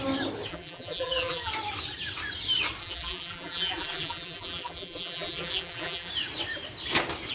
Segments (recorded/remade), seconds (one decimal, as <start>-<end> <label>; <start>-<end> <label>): 0.0-0.5 recorded; 0.5-1.5 remade; 1.5-2.8 recorded; 2.8-6.1 remade; 6.1-7.3 recorded

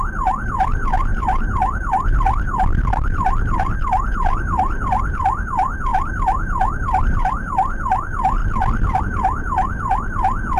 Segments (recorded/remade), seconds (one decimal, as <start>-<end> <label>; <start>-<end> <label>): 0.0-8.4 remade; 8.4-9.0 recorded; 9.0-10.6 remade